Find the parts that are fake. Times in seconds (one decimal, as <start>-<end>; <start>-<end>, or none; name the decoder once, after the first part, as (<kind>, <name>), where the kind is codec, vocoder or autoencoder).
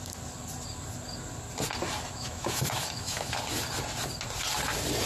2.1-3.4 (autoencoder, DAC-VAE)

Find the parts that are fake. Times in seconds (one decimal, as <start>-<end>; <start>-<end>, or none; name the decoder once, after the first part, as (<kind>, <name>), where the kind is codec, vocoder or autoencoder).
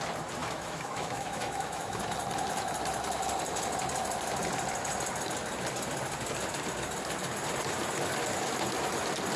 0.4-2.0 (autoencoder, DAC-VAE)